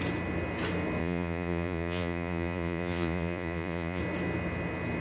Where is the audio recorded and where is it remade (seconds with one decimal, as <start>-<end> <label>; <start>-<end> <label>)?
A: 0.0-1.0 recorded; 1.0-4.0 remade; 4.0-5.0 recorded